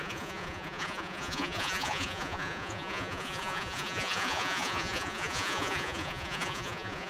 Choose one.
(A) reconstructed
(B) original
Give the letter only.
A